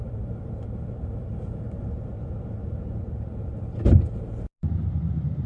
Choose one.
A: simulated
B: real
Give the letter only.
A